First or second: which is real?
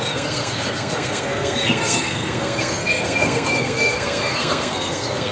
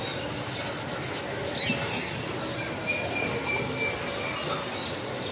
second